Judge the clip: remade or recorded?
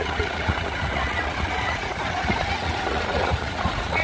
remade